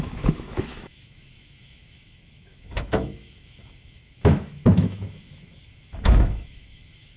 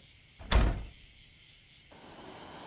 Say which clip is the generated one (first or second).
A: first